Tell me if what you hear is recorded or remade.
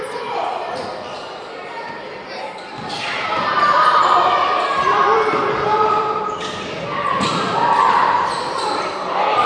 remade